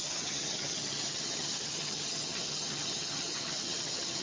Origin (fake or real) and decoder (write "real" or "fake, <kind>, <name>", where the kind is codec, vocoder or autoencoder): fake, vocoder, HiFi-GAN